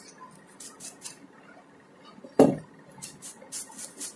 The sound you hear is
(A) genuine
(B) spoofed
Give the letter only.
B